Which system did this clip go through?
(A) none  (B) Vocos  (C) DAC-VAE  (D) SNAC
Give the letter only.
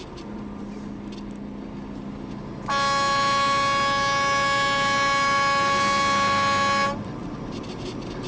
A